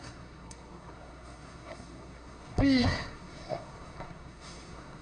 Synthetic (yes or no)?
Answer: yes